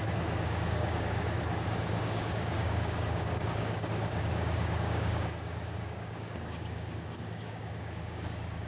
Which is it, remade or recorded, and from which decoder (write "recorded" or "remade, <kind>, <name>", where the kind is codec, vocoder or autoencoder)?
remade, codec, DAC